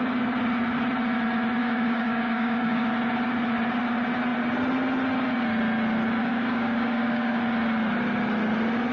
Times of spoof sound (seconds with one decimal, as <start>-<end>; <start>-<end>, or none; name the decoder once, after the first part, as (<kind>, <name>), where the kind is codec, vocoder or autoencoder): 1.6-2.9 (codec, DAC); 6.2-7.4